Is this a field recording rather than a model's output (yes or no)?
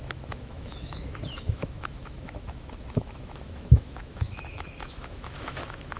no